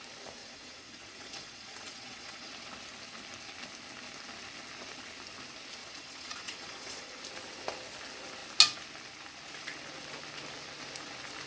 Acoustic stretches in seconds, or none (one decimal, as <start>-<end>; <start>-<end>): 0.0-0.4; 2.5-5.8; 7.2-11.5